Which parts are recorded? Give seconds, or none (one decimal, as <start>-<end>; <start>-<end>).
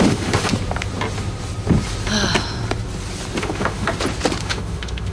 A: 0.5-3.4; 3.9-4.4